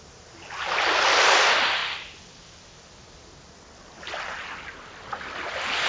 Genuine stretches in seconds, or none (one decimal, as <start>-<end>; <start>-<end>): 0.0-5.9